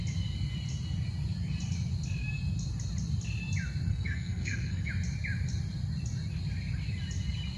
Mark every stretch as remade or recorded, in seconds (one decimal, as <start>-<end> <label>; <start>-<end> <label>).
0.0-3.9 recorded; 3.9-4.9 remade; 4.9-7.6 recorded